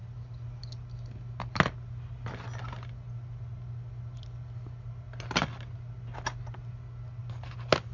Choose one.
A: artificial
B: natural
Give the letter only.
B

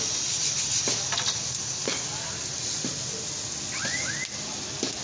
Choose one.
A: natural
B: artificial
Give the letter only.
A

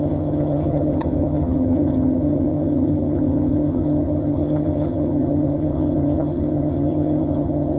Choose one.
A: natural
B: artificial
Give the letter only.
B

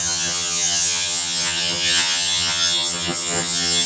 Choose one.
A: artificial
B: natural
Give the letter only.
A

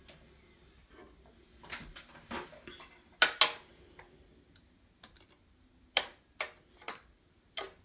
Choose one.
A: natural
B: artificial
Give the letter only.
A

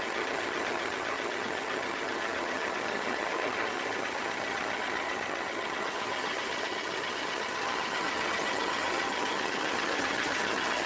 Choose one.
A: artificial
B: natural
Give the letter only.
A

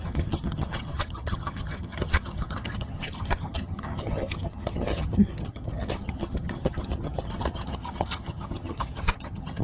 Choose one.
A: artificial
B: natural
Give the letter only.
A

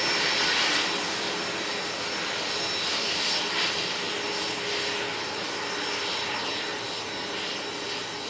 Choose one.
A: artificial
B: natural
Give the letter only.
B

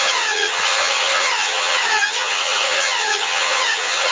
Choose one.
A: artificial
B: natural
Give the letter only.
A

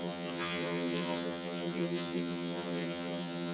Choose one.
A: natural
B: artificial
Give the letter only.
B